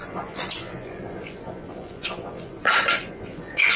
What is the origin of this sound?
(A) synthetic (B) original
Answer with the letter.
A